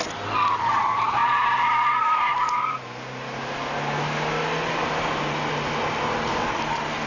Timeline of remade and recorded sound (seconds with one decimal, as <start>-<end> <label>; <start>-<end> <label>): 0.0-7.1 recorded